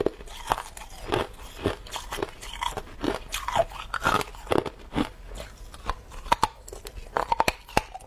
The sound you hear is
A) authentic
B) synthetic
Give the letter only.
A